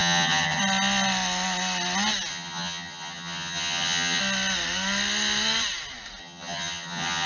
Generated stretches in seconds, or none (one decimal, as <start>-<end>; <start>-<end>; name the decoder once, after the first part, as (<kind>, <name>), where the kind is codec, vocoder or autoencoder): 0.0-0.6 (vocoder, HiFi-GAN); 2.3-4.2; 6.2-7.3